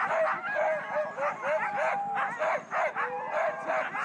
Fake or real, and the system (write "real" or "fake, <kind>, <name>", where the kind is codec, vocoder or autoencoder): real